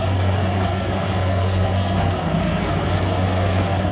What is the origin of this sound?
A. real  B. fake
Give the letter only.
B